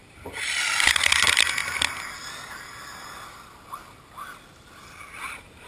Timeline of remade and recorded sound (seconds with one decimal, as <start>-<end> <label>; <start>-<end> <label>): 0.0-1.1 remade; 1.1-5.7 recorded